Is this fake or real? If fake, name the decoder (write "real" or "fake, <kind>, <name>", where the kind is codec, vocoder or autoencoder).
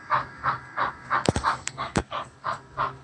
fake, codec, DAC